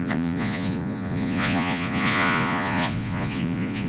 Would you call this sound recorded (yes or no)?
no